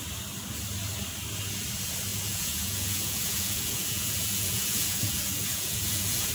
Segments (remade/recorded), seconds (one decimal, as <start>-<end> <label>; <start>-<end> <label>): 0.0-2.1 recorded; 2.1-6.3 remade